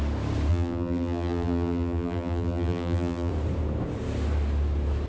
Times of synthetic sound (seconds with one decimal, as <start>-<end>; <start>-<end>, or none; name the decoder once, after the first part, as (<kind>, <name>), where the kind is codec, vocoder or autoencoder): 0.5-3.3 (vocoder, BigVGAN v2)